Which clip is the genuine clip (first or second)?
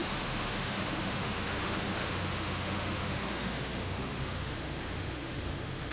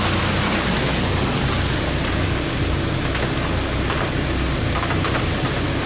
second